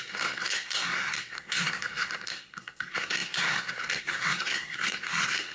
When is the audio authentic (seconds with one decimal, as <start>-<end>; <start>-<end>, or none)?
none